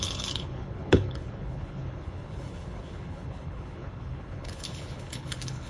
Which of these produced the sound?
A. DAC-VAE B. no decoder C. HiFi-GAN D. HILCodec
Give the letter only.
D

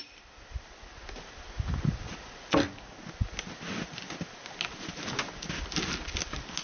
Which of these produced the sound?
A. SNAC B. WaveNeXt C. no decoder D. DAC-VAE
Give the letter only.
C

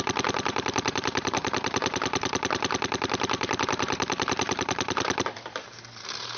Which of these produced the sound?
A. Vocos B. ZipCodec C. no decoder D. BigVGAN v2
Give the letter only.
D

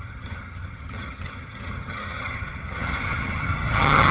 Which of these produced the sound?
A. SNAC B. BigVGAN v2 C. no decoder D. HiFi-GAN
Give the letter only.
D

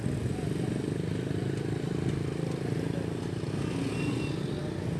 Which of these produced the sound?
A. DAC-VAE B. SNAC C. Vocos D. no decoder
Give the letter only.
D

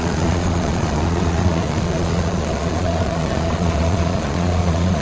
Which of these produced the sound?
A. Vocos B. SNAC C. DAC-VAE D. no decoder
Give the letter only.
A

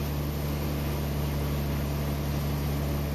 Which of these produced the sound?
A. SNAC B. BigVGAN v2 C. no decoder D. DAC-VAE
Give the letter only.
C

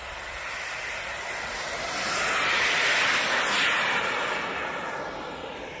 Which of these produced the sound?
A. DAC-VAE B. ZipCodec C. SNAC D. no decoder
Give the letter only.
D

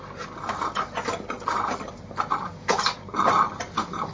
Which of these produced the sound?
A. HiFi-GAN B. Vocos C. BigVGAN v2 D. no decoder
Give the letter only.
D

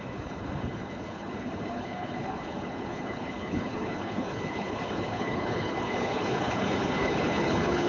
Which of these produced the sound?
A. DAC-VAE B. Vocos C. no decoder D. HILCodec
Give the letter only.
D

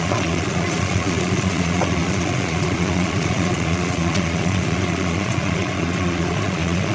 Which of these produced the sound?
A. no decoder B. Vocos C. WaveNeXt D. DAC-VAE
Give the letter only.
B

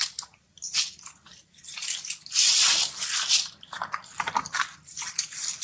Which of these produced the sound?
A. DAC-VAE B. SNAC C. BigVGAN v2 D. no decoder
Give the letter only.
D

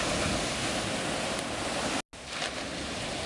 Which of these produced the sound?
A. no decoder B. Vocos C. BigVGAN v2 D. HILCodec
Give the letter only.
A